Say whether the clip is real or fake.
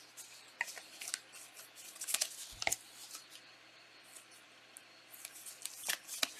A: real